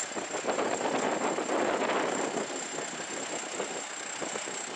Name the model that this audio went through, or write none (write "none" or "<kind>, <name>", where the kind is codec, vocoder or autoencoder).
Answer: none